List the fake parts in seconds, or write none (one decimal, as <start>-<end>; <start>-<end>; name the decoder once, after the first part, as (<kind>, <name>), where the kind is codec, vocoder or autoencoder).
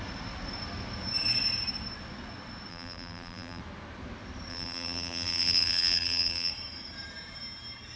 2.7-3.6 (vocoder, BigVGAN v2); 4.5-6.5